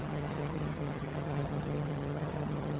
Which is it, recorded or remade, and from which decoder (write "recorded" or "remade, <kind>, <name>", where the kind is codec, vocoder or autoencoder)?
remade, vocoder, HiFi-GAN